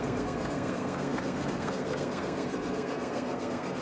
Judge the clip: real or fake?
fake